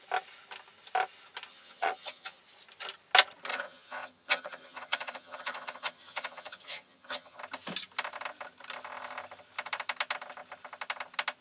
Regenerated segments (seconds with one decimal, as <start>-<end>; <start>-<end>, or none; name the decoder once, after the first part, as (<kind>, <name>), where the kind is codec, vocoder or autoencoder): 1.5-2.4 (vocoder, HiFi-GAN); 3.5-7.4